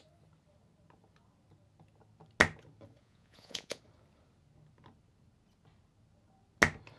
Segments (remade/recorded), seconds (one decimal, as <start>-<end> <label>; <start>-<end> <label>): 0.0-3.0 recorded; 3.0-3.8 remade; 3.8-7.0 recorded